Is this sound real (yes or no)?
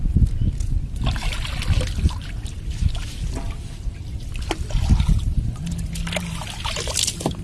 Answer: yes